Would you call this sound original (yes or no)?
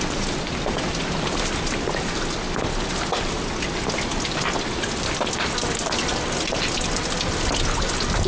yes